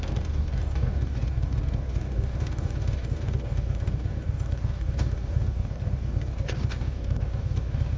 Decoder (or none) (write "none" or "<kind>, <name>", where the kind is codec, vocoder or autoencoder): codec, DAC